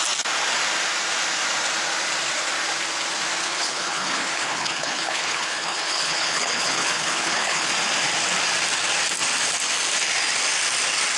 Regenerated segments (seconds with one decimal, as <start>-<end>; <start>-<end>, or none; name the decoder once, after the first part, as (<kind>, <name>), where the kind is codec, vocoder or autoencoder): 3.4-7.7 (codec, HILCodec)